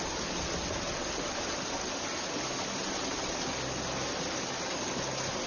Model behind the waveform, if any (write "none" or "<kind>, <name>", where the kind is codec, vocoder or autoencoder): none